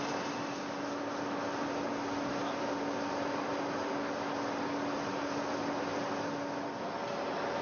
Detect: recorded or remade recorded